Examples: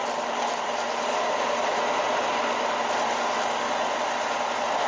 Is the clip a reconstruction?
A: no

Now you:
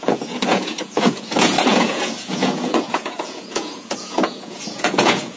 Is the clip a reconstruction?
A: yes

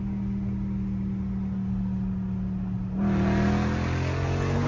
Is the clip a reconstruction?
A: no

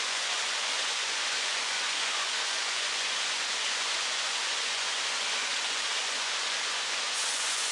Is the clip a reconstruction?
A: yes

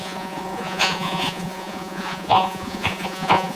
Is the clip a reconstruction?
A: yes